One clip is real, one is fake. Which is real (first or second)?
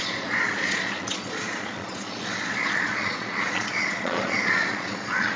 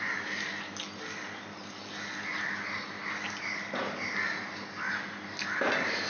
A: second